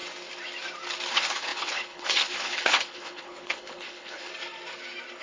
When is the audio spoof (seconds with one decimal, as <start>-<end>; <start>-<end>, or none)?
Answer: 1.1-4.3